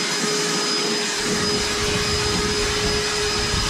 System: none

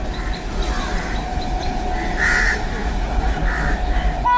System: none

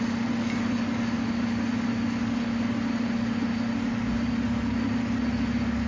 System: none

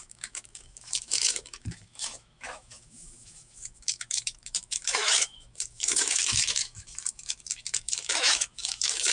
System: autoencoder, DAC-VAE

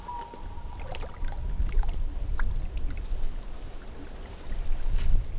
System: none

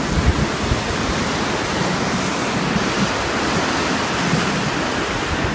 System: none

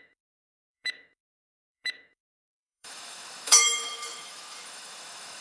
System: autoencoder, DAC-VAE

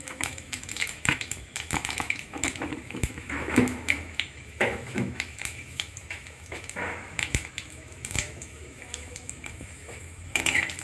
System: autoencoder, DAC-VAE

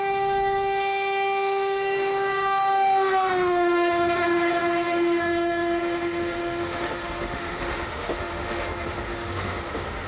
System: autoencoder, DAC-VAE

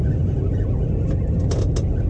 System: none